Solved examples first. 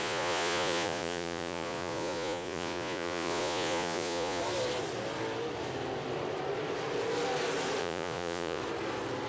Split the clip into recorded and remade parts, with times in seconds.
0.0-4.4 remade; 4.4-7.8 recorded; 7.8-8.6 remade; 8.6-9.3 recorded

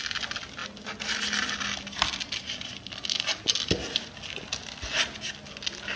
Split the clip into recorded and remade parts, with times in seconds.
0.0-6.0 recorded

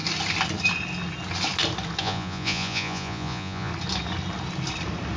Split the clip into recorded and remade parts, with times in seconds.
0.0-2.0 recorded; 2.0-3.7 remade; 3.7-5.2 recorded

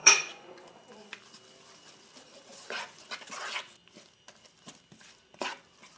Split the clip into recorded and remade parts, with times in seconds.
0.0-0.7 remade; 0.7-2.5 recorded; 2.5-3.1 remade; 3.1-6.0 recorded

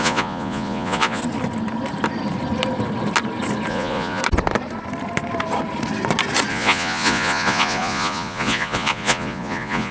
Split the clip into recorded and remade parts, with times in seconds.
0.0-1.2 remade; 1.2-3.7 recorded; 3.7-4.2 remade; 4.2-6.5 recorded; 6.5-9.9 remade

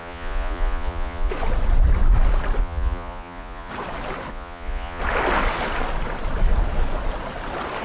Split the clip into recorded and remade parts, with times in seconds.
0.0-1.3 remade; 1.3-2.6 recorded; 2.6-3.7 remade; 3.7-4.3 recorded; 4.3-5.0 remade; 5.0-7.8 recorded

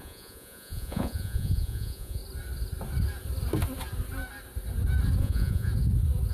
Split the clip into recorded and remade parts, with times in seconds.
0.0-2.2 remade; 2.2-5.2 recorded; 5.2-5.7 remade; 5.7-6.3 recorded

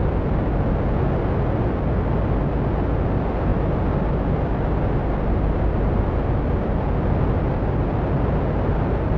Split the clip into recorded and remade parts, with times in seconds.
0.0-9.2 recorded